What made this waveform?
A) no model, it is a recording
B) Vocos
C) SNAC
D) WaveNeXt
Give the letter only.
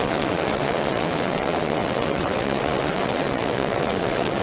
D